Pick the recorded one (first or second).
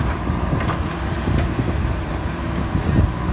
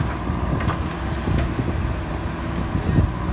second